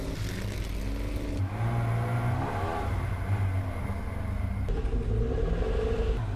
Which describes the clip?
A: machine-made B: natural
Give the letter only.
B